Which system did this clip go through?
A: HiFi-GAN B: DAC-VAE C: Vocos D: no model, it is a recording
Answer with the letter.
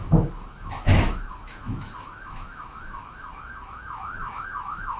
B